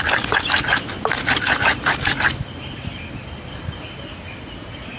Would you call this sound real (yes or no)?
yes